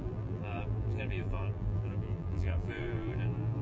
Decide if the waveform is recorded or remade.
remade